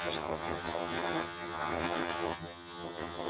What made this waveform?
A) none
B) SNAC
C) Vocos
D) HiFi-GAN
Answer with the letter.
D